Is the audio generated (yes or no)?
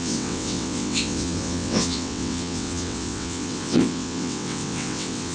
yes